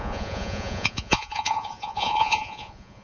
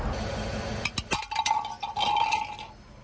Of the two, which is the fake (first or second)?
first